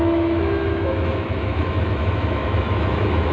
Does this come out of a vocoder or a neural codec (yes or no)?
yes